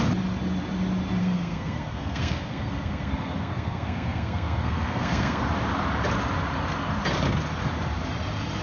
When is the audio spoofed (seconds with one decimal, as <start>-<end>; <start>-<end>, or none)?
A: 1.2-5.4